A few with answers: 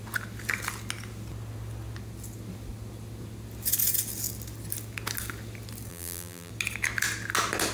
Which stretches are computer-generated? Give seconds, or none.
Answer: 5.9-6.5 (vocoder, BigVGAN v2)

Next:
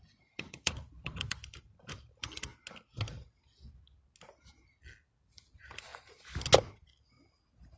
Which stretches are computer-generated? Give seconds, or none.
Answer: 0.0-2.5 (vocoder, BigVGAN v2); 5.2-5.9

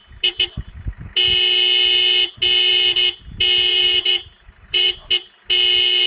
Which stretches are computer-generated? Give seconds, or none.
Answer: 3.7-4.9 (vocoder, BigVGAN v2)